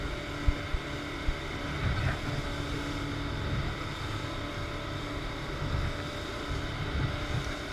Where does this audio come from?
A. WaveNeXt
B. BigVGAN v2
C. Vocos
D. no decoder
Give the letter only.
D